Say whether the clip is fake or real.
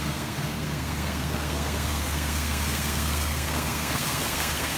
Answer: fake